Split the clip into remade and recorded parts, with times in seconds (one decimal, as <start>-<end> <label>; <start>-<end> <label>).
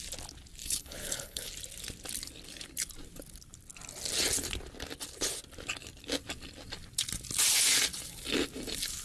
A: 0.0-0.6 recorded; 0.6-1.5 remade; 1.5-9.0 recorded